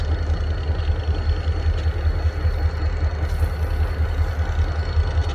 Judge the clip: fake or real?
real